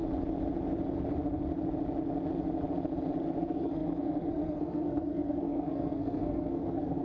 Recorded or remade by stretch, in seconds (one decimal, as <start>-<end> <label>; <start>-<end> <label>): 0.0-3.4 recorded; 3.4-7.0 remade

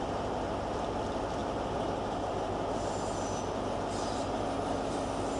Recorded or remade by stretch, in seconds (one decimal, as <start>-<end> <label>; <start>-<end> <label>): 0.0-5.4 recorded

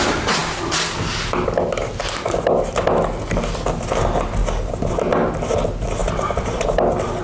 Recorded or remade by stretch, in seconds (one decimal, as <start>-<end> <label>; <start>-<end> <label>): 0.0-6.0 recorded; 6.0-6.6 remade; 6.6-7.2 recorded

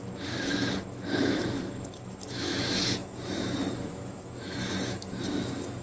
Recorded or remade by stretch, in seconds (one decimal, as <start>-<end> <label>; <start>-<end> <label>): 0.0-5.8 remade

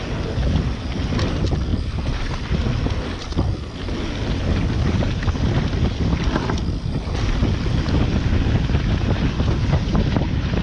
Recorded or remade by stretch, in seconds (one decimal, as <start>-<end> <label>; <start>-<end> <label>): 0.0-10.6 recorded